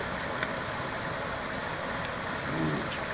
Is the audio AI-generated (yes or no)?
no